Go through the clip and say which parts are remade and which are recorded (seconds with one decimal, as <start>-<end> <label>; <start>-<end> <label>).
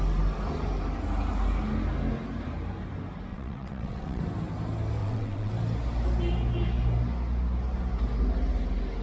0.0-3.3 recorded; 3.3-4.2 remade; 4.2-5.0 recorded; 5.0-5.5 remade; 5.5-9.0 recorded